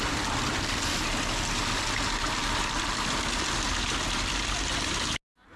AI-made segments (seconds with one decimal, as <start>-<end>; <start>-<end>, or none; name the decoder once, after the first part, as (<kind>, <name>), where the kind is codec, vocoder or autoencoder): none